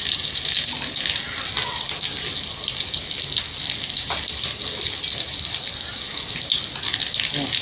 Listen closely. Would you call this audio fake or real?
real